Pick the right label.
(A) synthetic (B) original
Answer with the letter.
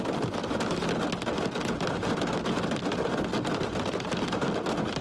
B